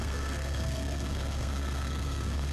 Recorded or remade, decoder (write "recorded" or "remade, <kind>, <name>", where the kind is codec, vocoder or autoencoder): remade, codec, SNAC